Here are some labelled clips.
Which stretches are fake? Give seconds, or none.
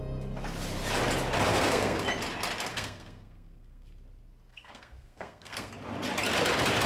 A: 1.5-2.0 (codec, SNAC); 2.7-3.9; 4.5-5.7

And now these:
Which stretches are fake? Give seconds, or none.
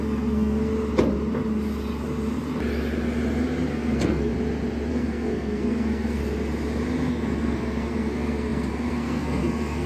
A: 0.0-0.7 (codec, SNAC); 3.7-4.3; 4.9-6.2; 7.1-9.9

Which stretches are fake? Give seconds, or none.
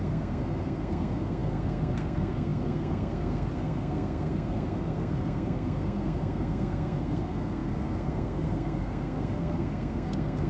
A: 0.0-10.5 (codec, SNAC)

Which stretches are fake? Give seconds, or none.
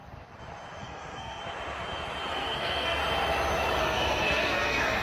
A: 0.8-1.4 (codec, SNAC); 2.3-3.0; 3.8-5.0